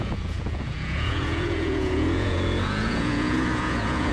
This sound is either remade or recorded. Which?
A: remade